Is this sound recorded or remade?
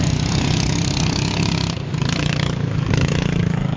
remade